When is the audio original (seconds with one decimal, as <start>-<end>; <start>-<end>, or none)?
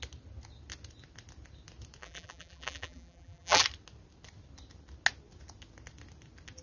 0.0-2.0; 3.6-6.6